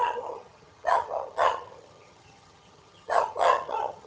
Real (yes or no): no